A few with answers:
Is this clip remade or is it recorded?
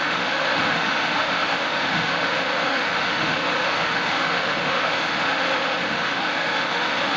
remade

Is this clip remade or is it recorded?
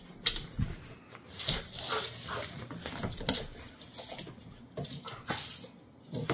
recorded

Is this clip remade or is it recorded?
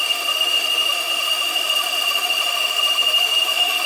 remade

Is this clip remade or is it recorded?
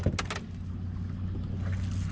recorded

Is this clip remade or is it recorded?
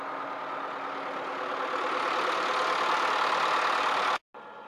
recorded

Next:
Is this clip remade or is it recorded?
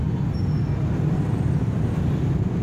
recorded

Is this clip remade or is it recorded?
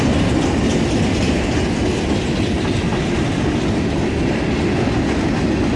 recorded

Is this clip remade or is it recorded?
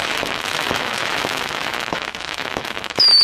remade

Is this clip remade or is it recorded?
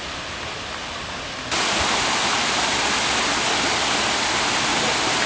recorded